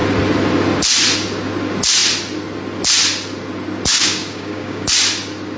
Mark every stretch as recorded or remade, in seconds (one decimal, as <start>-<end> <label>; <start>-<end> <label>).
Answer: 0.0-3.9 recorded; 3.9-4.9 remade; 4.9-5.6 recorded